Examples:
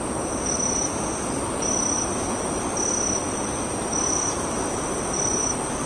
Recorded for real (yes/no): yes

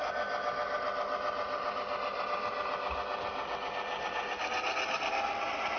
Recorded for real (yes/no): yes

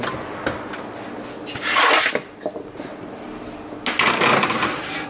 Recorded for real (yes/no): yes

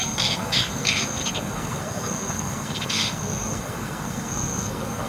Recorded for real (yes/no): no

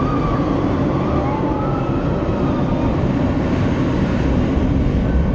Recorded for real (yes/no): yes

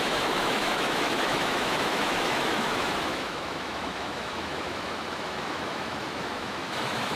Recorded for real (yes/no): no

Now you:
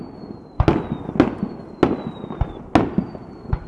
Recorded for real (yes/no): yes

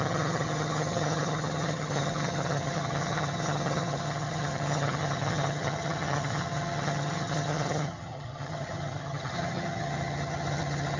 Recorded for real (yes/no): no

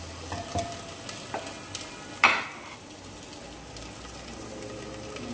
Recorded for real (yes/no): yes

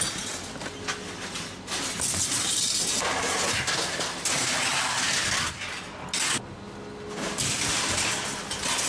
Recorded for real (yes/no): yes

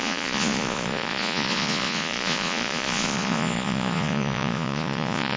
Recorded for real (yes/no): no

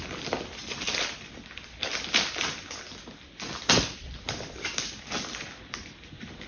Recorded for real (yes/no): yes